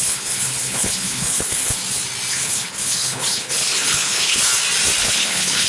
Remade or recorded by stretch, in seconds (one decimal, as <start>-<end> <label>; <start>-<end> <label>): 0.0-1.8 remade; 1.8-2.3 recorded; 2.3-4.4 remade; 4.4-5.0 recorded; 5.0-5.7 remade